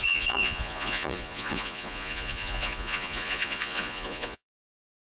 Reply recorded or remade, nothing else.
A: remade